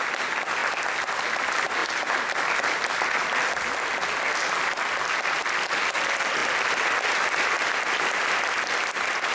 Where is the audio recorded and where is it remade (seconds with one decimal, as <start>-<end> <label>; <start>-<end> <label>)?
0.0-9.3 recorded